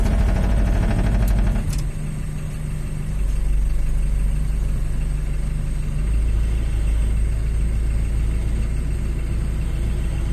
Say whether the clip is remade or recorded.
recorded